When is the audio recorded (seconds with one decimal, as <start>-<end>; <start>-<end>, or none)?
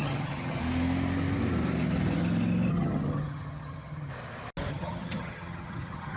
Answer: 0.6-2.7; 4.1-4.7